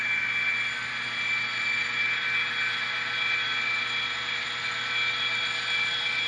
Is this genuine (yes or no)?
yes